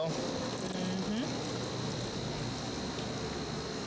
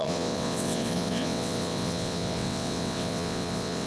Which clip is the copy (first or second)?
second